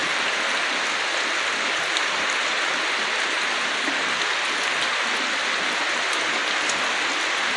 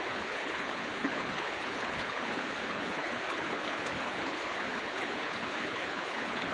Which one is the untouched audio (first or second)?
first